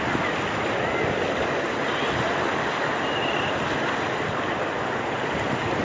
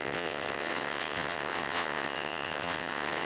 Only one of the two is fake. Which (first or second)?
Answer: second